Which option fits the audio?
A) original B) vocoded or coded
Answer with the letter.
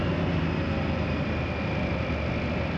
A